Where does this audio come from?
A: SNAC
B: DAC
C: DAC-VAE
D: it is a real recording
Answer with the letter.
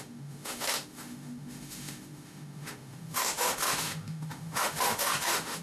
C